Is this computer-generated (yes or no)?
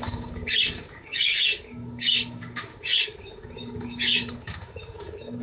yes